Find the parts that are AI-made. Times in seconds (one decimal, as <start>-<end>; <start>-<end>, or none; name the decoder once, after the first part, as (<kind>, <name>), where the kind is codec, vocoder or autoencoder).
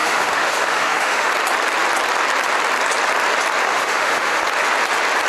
0.0-1.3 (autoencoder, DAC-VAE); 3.7-4.4